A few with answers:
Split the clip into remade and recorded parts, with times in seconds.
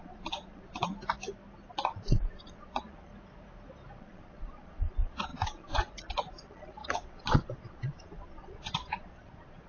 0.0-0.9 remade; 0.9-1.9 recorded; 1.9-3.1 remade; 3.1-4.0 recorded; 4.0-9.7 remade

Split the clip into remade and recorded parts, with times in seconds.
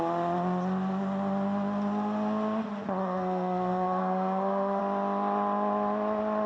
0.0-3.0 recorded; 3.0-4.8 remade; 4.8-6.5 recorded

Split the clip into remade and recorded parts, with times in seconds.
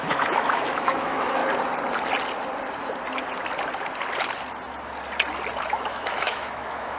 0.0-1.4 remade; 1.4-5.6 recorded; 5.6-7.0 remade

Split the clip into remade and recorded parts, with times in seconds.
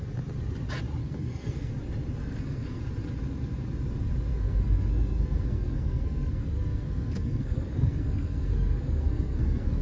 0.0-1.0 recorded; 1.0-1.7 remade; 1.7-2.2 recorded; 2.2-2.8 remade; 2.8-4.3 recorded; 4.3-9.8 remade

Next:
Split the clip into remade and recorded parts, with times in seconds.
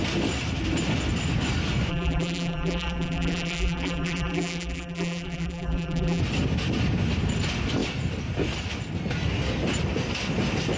0.0-1.9 recorded; 1.9-6.2 remade; 6.2-10.8 recorded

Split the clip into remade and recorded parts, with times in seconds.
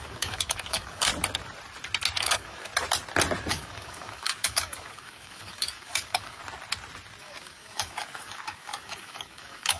0.0-1.1 remade; 1.1-2.2 recorded; 2.2-2.7 remade; 2.7-3.5 recorded; 3.5-6.4 remade; 6.4-7.2 recorded; 7.2-9.8 remade